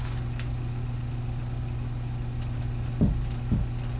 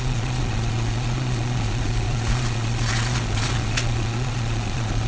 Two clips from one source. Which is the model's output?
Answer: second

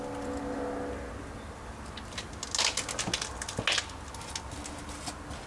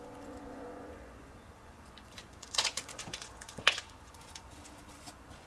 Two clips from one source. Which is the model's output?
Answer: second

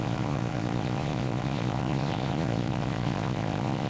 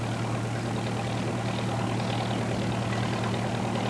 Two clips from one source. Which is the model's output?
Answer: first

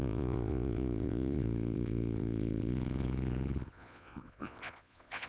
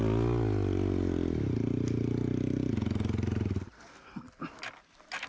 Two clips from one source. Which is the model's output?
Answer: first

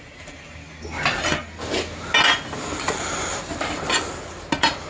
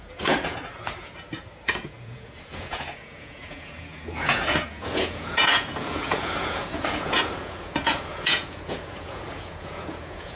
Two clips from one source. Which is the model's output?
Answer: second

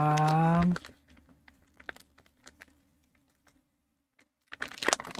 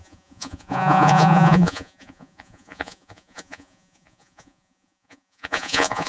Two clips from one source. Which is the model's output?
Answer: second